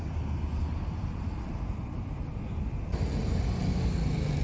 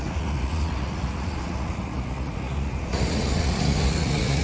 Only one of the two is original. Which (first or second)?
first